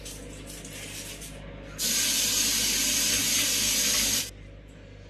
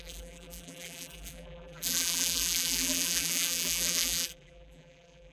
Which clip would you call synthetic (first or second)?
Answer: second